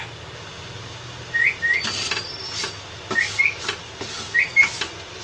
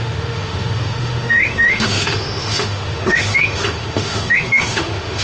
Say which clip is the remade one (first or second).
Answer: second